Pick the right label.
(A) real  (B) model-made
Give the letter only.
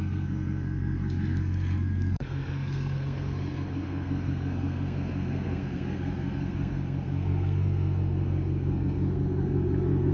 B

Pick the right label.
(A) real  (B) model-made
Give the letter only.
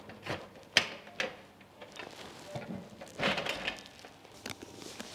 A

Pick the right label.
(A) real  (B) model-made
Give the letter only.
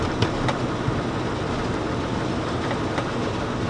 A